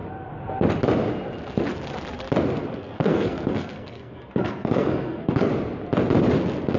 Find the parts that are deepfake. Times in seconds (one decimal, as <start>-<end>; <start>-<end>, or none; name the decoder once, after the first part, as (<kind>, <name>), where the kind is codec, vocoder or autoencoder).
2.6-5.5 (codec, SNAC)